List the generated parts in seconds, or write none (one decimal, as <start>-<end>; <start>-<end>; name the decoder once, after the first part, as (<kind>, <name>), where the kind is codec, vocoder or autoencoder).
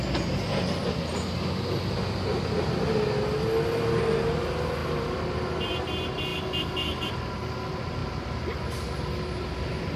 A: 4.8-5.8 (vocoder, BigVGAN v2); 6.3-7.1